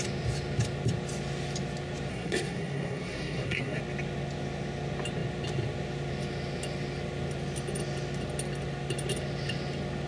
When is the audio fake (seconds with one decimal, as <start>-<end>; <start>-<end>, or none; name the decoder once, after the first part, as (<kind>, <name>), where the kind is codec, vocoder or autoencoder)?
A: 2.1-3.8 (codec, SNAC)